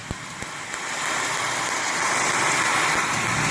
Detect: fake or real real